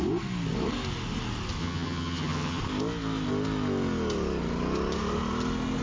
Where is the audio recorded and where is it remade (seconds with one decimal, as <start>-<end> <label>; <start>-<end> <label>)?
0.0-1.6 recorded; 1.6-2.6 remade; 2.6-5.8 recorded

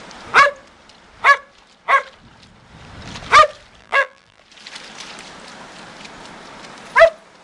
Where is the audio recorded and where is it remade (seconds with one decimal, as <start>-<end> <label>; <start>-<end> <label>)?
0.0-3.8 recorded; 3.8-4.4 remade; 4.4-7.4 recorded

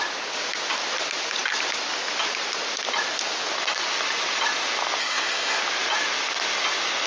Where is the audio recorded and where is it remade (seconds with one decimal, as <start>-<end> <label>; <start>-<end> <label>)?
0.0-5.0 recorded; 5.0-5.6 remade; 5.6-7.1 recorded

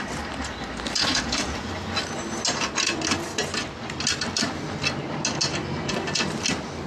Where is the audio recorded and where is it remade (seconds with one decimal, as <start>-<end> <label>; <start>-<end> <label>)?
0.0-1.1 recorded; 1.1-1.7 remade; 1.7-6.9 recorded

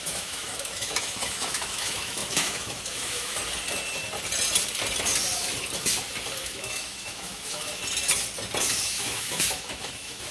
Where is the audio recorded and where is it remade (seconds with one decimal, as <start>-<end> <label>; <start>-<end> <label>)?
0.0-3.4 remade; 3.4-6.4 recorded; 6.4-7.8 remade; 7.8-8.7 recorded; 8.7-10.3 remade

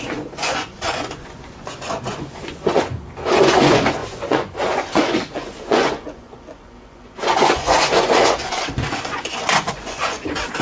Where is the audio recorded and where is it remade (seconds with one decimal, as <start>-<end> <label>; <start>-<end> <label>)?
0.0-10.6 remade